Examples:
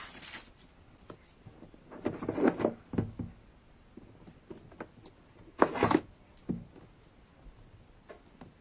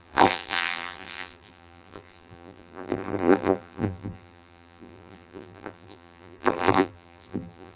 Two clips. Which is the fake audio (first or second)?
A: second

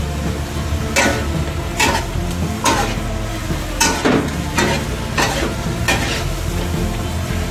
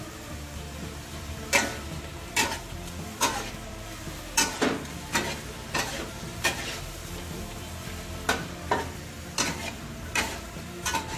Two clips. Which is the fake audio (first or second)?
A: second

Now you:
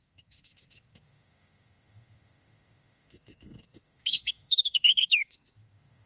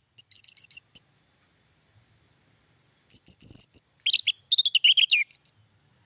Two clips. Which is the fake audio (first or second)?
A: first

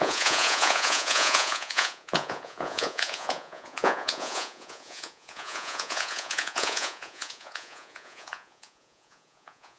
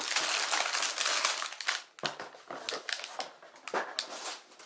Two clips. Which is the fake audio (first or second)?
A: first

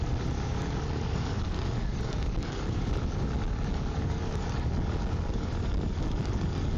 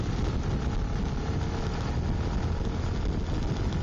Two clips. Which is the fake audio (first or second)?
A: first